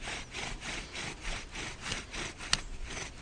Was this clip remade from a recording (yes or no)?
no